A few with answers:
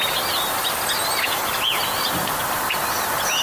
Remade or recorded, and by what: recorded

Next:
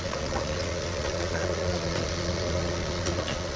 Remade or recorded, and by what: remade, vocoder, Vocos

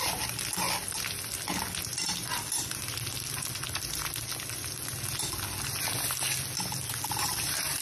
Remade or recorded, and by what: recorded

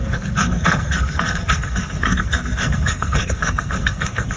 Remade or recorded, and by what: remade, codec, SNAC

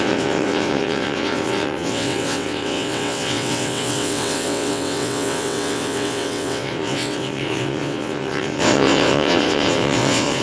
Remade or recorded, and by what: remade, vocoder, WaveNeXt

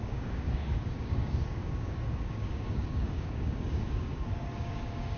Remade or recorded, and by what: remade, codec, DAC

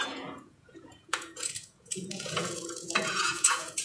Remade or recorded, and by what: remade, vocoder, Vocos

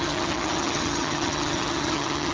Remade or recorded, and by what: remade, vocoder, HiFi-GAN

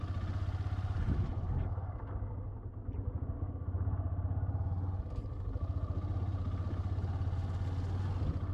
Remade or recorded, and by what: recorded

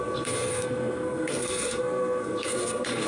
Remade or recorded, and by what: remade, codec, SNAC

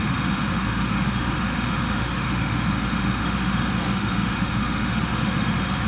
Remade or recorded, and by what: remade, autoencoder, DAC-VAE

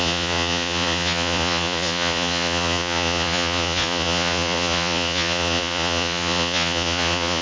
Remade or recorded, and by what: remade, vocoder, Vocos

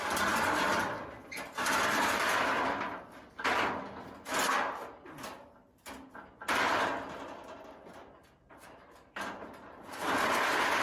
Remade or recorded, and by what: recorded